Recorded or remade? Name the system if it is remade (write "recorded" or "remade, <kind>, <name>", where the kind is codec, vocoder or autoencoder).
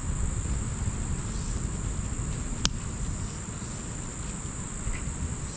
recorded